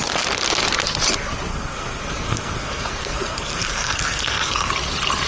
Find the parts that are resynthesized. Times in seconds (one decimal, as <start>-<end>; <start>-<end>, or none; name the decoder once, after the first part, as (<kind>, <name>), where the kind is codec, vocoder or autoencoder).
1.5-4.7 (codec, SNAC)